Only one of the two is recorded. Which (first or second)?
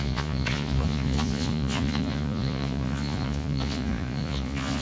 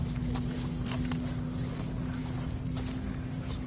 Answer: second